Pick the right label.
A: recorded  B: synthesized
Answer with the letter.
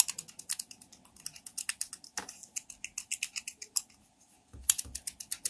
A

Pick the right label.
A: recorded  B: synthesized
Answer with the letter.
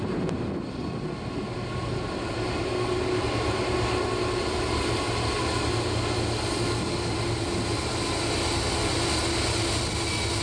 A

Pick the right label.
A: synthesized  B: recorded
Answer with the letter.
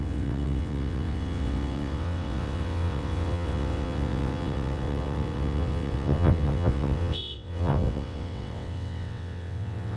A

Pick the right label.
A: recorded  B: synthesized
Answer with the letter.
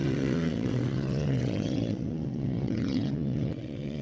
B